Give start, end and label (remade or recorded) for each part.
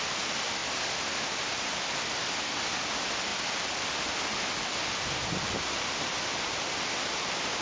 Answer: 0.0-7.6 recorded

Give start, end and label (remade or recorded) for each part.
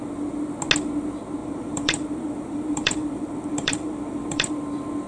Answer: 0.0-1.4 recorded; 1.4-4.5 remade; 4.5-5.1 recorded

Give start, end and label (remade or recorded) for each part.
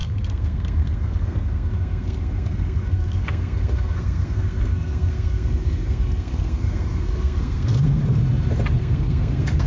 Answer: 0.0-8.0 remade; 8.0-8.8 recorded; 8.8-9.7 remade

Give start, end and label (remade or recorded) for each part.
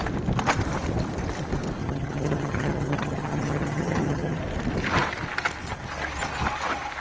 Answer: 0.0-1.8 recorded; 1.8-4.4 remade; 4.4-7.0 recorded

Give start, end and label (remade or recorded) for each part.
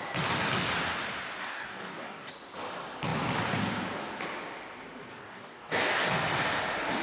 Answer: 0.0-1.4 recorded; 1.4-2.3 remade; 2.3-5.1 recorded; 5.1-6.0 remade; 6.0-7.0 recorded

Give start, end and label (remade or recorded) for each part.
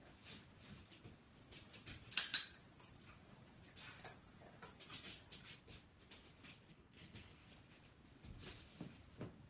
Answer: 0.0-6.7 recorded; 6.7-7.5 remade; 7.5-9.5 recorded